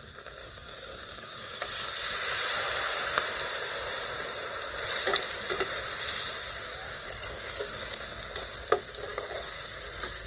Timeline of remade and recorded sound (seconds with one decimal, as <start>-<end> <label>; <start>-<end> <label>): 0.0-0.4 recorded; 0.4-1.6 remade; 1.6-6.8 recorded; 6.8-8.1 remade; 8.1-10.3 recorded